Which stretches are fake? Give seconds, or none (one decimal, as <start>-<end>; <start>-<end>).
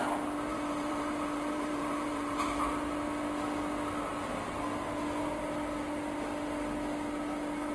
0.5-2.6